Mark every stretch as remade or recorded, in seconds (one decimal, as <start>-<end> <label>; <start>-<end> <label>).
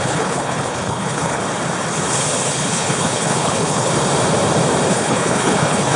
0.0-1.4 remade; 1.4-2.5 recorded; 2.5-3.9 remade; 3.9-4.9 recorded; 4.9-6.0 remade